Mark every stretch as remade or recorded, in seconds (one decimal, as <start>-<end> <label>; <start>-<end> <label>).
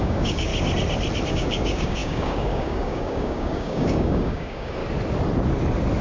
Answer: 0.0-0.5 remade; 0.5-1.3 recorded; 1.3-4.8 remade; 4.8-6.0 recorded